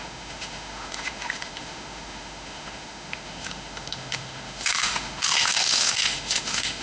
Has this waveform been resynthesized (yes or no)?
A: yes